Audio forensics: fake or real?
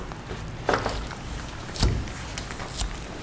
real